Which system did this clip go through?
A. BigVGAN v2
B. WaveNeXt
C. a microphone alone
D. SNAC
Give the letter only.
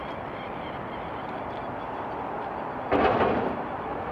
C